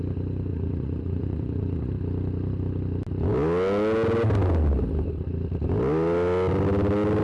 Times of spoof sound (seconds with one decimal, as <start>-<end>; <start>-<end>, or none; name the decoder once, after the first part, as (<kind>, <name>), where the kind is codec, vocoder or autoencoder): 0.5-1.9 (vocoder, Vocos)